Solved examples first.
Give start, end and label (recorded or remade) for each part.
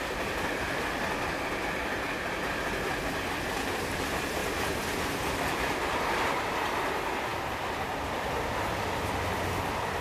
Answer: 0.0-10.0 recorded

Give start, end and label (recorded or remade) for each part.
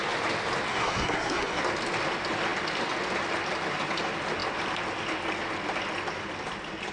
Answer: 0.0-0.7 recorded; 0.7-1.6 remade; 1.6-6.9 recorded